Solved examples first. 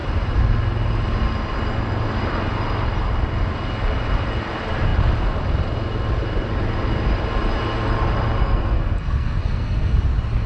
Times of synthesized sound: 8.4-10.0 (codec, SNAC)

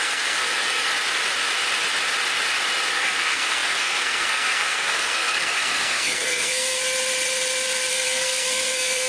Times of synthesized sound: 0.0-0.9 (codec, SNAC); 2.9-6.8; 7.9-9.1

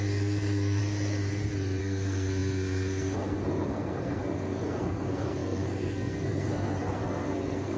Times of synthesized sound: 0.0-0.8 (codec, SNAC); 1.8-7.8

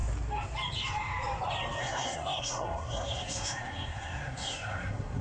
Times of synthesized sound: 1.8-5.2 (codec, SNAC)